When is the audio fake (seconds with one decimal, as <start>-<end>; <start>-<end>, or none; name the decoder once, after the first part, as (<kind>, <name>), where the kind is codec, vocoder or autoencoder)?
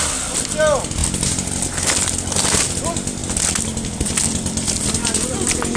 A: none